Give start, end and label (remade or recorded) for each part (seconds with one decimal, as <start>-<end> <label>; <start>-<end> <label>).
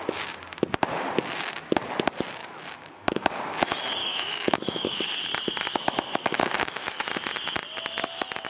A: 0.0-2.4 recorded; 2.4-3.3 remade; 3.3-4.0 recorded; 4.0-5.3 remade; 5.3-5.7 recorded; 5.7-7.0 remade; 7.0-8.5 recorded